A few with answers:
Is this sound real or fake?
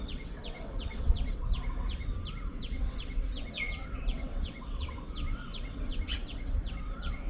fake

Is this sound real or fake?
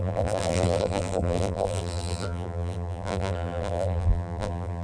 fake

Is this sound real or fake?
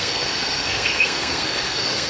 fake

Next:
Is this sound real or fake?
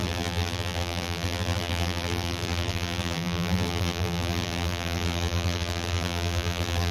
fake